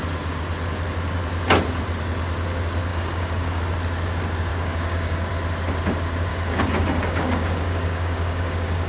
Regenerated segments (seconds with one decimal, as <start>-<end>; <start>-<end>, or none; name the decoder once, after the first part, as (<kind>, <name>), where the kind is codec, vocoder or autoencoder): 2.9-3.6 (codec, DAC); 4.5-5.3; 6.3-8.9